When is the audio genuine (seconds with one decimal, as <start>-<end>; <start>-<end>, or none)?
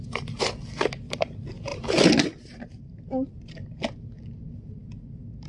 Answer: 0.0-1.7; 4.1-5.5